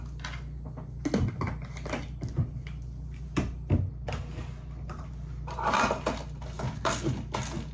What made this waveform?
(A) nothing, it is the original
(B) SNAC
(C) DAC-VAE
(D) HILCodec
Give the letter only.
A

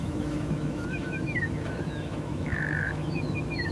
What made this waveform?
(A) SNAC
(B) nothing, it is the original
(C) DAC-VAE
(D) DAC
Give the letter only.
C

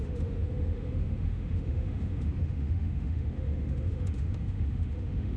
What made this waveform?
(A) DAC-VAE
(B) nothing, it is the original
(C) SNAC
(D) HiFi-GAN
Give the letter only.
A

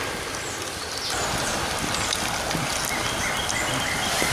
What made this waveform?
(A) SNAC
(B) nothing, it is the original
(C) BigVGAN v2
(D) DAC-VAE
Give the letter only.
B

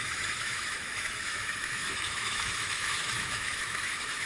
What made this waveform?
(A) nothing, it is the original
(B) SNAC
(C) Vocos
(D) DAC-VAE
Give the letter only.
D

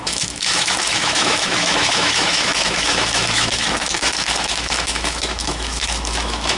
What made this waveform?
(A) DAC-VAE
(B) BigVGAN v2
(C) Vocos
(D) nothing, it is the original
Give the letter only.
A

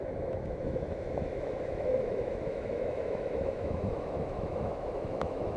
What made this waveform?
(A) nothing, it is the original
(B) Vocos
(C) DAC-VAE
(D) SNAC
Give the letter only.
C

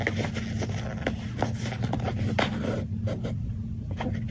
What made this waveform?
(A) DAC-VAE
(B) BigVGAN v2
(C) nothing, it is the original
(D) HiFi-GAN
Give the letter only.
C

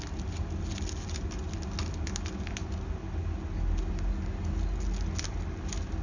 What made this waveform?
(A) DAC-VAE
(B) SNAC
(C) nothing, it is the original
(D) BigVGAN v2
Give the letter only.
C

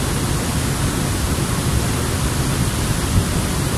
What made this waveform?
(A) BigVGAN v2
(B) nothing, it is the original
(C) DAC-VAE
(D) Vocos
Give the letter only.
B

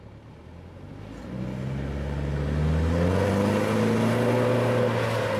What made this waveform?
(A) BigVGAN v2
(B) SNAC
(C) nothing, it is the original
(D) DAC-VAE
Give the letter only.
C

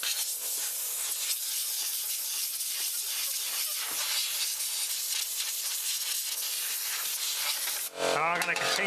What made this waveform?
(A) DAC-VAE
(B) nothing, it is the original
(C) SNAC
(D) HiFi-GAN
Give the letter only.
B